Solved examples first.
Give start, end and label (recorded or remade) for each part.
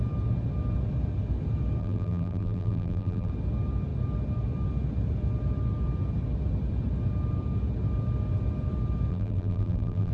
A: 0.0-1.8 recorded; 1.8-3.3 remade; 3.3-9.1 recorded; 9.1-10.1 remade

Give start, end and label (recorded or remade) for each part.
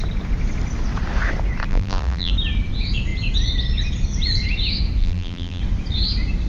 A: 0.0-1.7 recorded; 1.7-2.3 remade; 2.3-5.0 recorded; 5.0-5.6 remade; 5.6-6.5 recorded